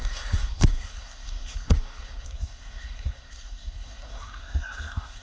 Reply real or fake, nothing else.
fake